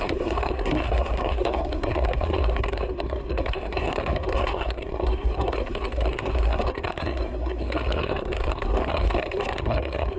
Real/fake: fake